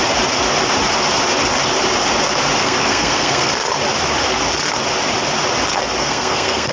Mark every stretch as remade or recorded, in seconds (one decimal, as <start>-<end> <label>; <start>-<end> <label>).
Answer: 0.0-2.6 recorded; 2.6-3.5 remade; 3.5-6.0 recorded; 6.0-6.7 remade